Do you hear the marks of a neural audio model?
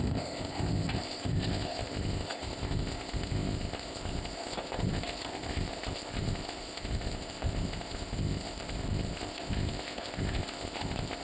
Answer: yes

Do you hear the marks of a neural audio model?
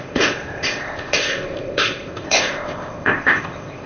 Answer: yes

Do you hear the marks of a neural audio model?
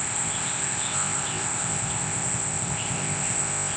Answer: yes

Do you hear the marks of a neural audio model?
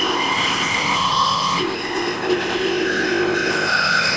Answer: yes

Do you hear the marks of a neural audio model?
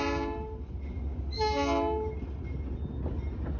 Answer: no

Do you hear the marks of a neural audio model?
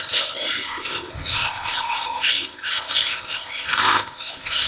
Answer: yes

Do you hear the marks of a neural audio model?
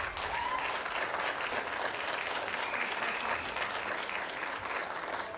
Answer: no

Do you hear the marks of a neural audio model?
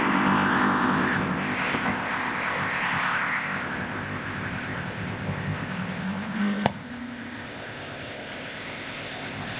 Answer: yes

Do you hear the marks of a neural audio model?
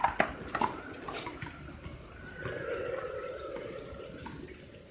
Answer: no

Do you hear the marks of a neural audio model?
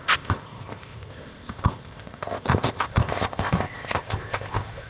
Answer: yes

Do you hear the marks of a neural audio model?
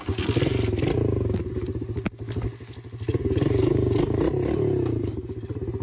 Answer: no